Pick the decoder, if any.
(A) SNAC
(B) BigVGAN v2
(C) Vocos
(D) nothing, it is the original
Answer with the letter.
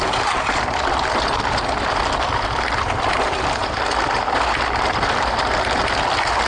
D